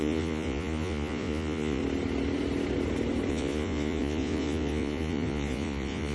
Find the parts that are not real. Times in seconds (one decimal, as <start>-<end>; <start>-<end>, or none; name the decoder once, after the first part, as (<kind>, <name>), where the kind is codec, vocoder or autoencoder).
0.0-1.8 (vocoder, Vocos); 3.3-6.1